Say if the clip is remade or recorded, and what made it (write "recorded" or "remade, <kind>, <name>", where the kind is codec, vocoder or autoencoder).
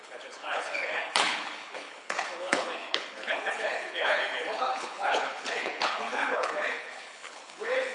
remade, codec, HILCodec